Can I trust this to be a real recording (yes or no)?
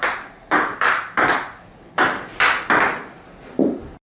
yes